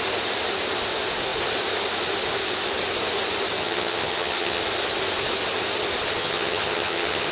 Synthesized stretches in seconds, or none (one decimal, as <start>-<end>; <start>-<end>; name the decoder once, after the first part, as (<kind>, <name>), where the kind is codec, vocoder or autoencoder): 3.6-4.6 (vocoder, HiFi-GAN); 6.2-7.3